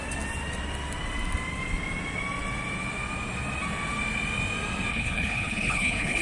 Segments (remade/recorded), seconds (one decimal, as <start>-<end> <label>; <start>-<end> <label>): 0.0-4.9 recorded; 4.9-6.2 remade